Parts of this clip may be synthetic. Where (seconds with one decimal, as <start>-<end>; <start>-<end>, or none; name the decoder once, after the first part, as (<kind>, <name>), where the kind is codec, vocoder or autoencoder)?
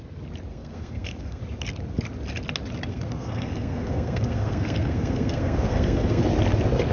0.5-1.4 (codec, SNAC); 2.9-6.2